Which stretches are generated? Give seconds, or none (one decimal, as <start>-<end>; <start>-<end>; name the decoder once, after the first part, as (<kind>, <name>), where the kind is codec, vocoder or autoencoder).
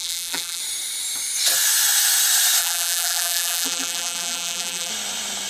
0.0-0.6 (vocoder, BigVGAN v2); 2.6-4.9